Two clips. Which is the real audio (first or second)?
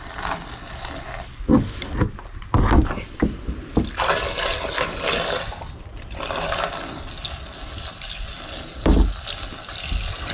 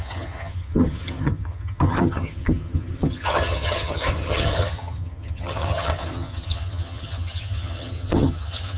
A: first